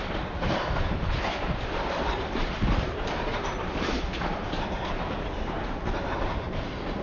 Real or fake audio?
fake